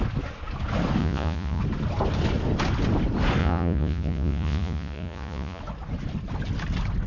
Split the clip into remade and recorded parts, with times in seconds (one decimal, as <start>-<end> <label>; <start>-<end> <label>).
0.0-1.0 recorded; 1.0-1.6 remade; 1.6-3.4 recorded; 3.4-5.6 remade; 5.6-7.1 recorded